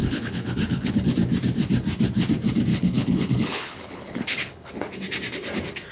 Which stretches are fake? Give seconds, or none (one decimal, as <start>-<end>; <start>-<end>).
0.0-1.0; 2.7-4.7